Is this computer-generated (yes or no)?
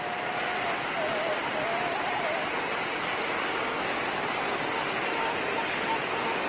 no